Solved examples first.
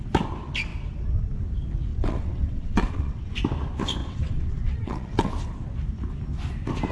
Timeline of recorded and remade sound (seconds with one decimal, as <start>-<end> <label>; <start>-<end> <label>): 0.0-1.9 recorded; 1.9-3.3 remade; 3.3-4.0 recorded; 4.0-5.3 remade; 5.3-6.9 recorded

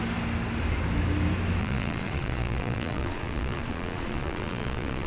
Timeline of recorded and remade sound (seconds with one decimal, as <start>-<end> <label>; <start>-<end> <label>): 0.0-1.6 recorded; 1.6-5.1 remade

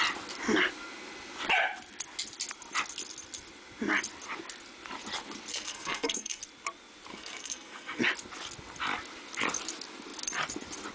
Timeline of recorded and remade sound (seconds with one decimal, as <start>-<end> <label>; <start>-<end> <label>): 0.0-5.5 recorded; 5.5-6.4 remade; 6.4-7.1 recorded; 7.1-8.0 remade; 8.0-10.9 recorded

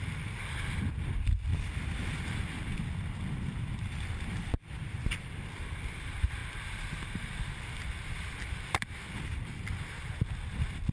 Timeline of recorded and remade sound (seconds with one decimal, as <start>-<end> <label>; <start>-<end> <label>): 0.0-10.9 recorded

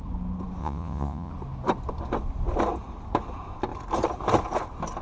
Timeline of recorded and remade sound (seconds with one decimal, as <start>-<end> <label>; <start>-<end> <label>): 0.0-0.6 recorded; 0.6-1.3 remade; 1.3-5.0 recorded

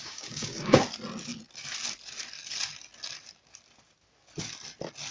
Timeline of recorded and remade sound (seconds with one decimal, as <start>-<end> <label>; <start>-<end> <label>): 0.0-0.8 remade; 0.8-5.1 recorded

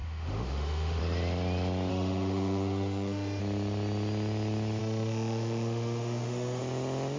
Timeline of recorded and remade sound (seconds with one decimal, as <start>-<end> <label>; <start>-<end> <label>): 0.0-1.0 remade; 1.0-1.9 recorded; 1.9-3.4 remade; 3.4-4.8 recorded; 4.8-6.6 remade; 6.6-7.2 recorded

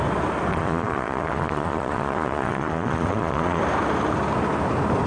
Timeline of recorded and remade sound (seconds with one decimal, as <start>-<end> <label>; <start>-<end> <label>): 0.0-0.5 recorded; 0.5-3.6 remade; 3.6-5.1 recorded